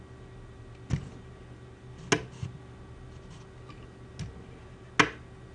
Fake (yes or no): no